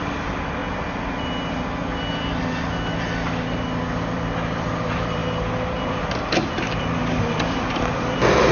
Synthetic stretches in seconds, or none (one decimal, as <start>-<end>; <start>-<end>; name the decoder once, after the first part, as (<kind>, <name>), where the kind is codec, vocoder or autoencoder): 0.0-0.6 (vocoder, BigVGAN v2); 4.1-5.2; 5.8-8.5